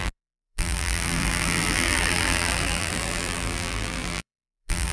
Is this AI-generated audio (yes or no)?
yes